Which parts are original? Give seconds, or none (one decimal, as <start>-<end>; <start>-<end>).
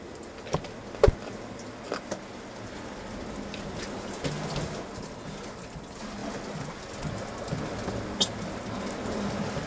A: 0.0-9.7